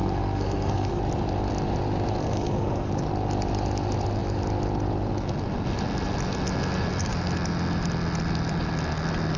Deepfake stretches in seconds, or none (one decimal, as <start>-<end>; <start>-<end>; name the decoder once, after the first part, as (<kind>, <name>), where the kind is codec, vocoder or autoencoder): 0.0-1.0 (codec, SNAC); 2.2-2.9